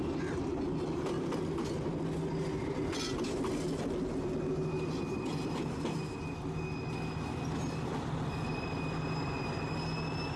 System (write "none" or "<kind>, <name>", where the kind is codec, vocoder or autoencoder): none